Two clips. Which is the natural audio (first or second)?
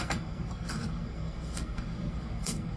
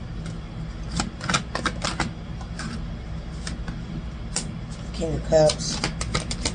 second